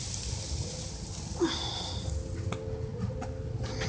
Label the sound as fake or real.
real